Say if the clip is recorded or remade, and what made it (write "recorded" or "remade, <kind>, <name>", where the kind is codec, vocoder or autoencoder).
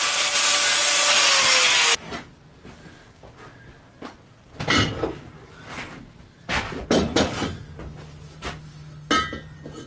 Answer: recorded